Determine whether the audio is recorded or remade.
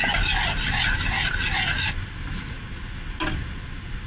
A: recorded